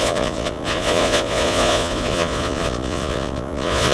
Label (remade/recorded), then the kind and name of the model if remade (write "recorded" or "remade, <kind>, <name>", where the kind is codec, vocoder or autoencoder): remade, vocoder, Vocos